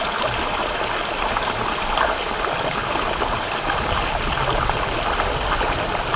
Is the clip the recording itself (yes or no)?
yes